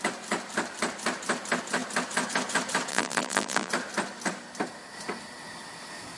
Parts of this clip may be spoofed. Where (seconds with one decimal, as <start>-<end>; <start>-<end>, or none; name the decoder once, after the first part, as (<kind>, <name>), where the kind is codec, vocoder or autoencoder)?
2.9-3.7 (vocoder, BigVGAN v2)